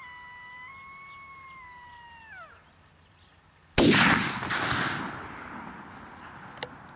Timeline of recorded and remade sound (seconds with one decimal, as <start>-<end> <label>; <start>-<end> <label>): 0.0-7.0 recorded